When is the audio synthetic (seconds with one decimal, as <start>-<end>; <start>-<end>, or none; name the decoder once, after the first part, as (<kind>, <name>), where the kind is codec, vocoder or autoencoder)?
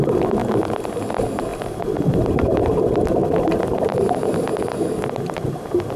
0.0-0.4 (vocoder, BigVGAN v2); 1.1-6.0